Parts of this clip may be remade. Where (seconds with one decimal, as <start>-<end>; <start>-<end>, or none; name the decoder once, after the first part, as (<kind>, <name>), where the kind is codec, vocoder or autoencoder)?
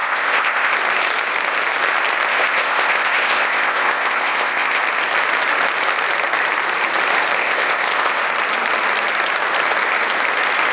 0.0-0.7 (codec, ZipCodec); 2.3-4.8; 7.4-8.2